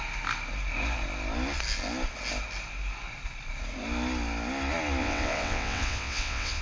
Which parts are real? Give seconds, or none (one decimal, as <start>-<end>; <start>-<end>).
0.0-5.0